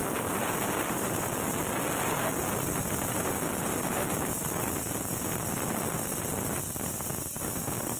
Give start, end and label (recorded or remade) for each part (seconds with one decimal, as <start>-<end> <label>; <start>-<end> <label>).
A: 0.0-8.0 recorded